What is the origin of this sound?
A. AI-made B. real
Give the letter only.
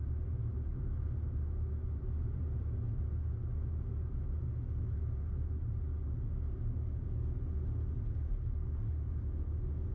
B